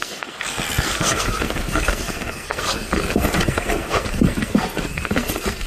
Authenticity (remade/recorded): remade